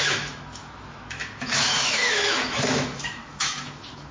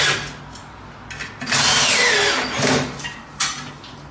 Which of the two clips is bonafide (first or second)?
second